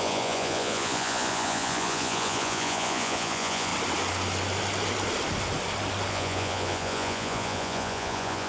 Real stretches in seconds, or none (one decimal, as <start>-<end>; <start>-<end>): 3.7-6.1